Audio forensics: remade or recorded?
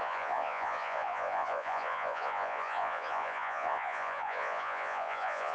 remade